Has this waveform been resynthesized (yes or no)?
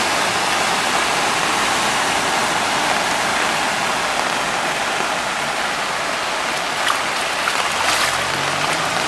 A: no